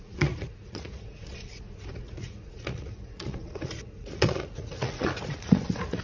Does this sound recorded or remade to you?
remade